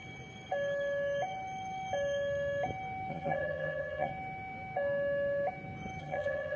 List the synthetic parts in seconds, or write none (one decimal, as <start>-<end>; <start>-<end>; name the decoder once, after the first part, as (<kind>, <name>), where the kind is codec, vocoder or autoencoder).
3.1-4.1 (vocoder, HiFi-GAN); 6.0-6.6